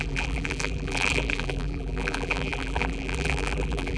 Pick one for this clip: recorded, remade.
remade